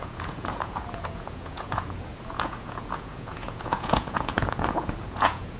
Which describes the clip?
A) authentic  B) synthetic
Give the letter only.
B